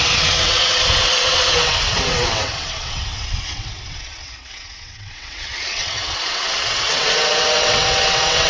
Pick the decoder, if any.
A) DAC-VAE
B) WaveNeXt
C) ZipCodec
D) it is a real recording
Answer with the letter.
B